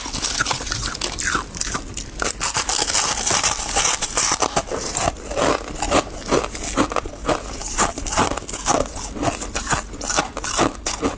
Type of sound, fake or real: real